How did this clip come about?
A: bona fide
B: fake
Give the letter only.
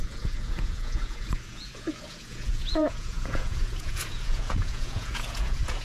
B